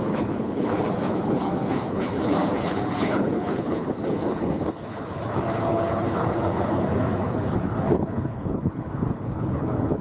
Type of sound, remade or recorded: remade